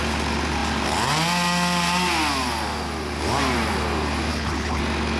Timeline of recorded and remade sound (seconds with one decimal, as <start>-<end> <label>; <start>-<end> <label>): 0.0-4.3 recorded; 4.3-4.8 remade; 4.8-5.2 recorded